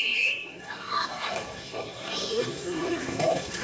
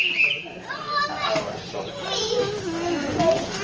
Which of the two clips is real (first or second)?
second